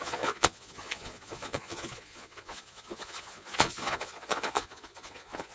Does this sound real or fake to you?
fake